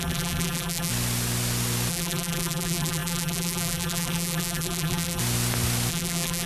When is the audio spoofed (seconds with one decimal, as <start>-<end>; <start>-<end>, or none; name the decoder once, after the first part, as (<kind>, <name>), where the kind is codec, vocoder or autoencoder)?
0.0-0.9 (vocoder, BigVGAN v2); 1.9-5.2; 5.9-6.5